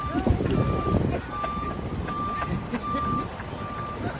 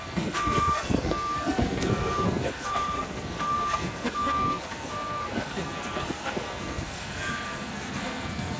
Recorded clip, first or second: first